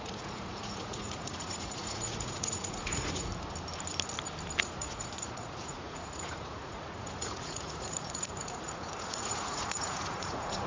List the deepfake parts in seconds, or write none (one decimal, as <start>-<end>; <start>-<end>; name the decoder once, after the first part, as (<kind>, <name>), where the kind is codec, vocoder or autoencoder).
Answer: 0.0-3.3 (vocoder, Vocos); 4.6-10.7